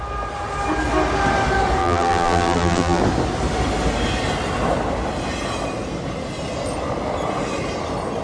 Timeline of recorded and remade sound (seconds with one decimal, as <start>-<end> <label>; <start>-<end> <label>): 0.0-1.8 recorded; 1.8-3.0 remade; 3.0-8.2 recorded